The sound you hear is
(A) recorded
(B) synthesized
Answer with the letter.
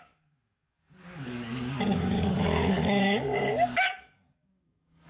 B